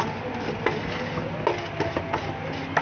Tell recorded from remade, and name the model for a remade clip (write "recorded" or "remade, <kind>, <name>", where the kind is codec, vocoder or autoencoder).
recorded